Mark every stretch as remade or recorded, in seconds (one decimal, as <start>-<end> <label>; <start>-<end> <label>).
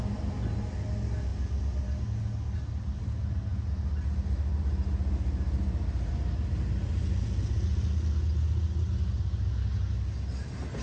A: 0.0-10.8 recorded